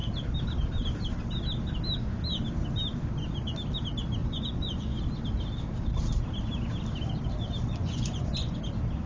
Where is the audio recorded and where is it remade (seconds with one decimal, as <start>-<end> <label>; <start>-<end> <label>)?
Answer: 0.0-4.2 recorded; 4.2-5.0 remade; 5.0-7.8 recorded; 7.8-8.6 remade; 8.6-9.1 recorded